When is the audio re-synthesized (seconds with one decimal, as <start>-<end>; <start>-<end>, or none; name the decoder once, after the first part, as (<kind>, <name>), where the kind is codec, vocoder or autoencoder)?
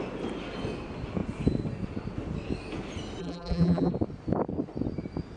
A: 3.2-3.9 (vocoder, BigVGAN v2)